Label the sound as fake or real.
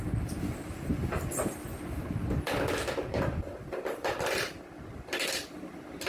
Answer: real